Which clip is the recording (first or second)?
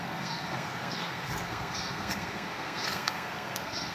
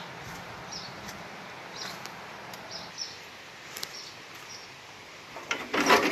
second